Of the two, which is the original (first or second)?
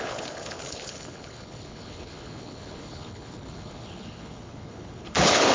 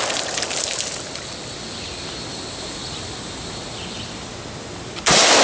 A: second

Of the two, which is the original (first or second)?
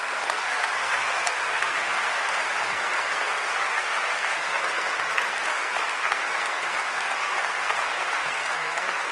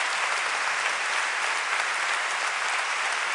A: second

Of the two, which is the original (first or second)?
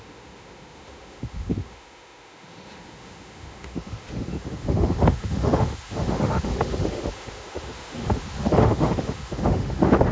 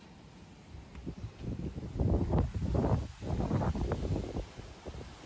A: second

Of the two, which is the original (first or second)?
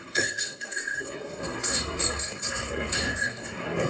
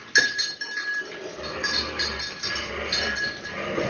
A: second